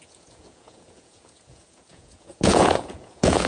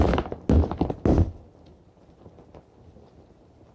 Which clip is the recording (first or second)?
second